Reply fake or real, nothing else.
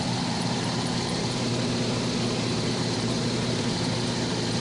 fake